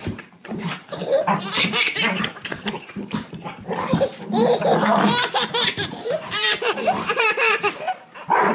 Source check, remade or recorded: remade